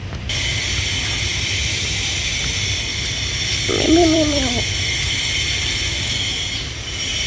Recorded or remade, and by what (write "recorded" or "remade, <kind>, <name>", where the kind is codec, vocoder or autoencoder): recorded